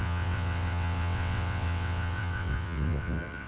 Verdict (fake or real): fake